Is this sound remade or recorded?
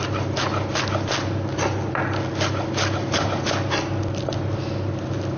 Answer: recorded